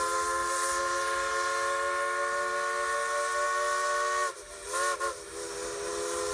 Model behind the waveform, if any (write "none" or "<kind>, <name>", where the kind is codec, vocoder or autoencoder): none